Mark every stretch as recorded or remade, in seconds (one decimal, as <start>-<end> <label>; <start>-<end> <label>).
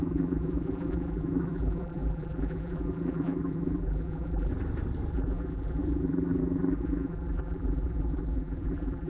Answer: 0.0-4.5 remade; 4.5-5.1 recorded; 5.1-9.1 remade